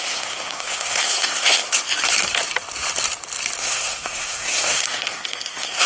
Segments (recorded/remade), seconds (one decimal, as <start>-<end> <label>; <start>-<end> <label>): 0.0-1.7 remade; 1.7-3.6 recorded; 3.6-5.9 remade